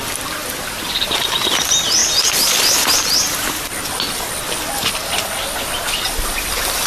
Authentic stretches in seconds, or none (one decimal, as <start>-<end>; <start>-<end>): 0.0-6.9